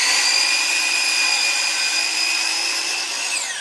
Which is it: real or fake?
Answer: real